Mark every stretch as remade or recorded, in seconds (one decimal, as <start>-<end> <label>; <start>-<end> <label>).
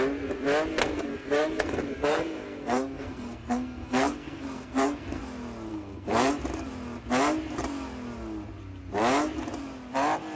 0.0-0.8 recorded; 0.8-5.2 remade; 5.2-5.7 recorded; 5.7-6.3 remade; 6.3-10.4 recorded